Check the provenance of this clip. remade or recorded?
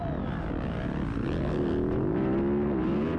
recorded